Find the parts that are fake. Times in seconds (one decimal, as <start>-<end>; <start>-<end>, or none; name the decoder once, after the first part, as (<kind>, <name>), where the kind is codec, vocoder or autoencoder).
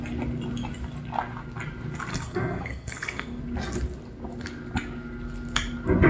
2.1-3.4 (codec, SNAC)